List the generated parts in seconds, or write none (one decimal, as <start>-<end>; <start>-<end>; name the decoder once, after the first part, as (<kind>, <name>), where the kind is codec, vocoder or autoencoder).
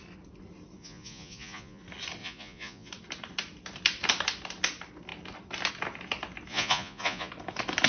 0.8-1.8 (vocoder, Vocos); 2.2-2.9; 6.5-7.3